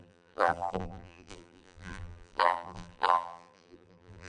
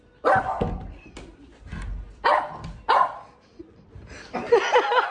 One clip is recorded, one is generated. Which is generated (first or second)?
first